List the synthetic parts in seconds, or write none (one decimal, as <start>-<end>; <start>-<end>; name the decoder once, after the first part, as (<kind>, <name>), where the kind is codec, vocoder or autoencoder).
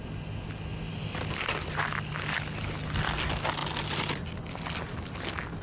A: none